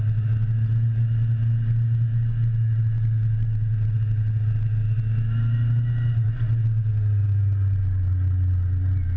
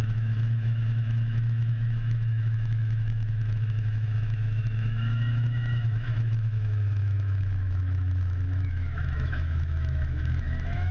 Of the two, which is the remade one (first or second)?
second